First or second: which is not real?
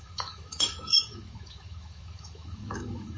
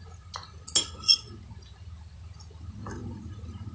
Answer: first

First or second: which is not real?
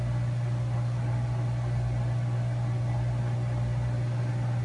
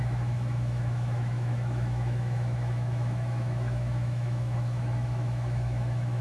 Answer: second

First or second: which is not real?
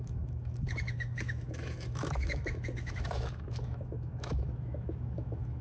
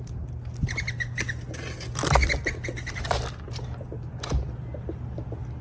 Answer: first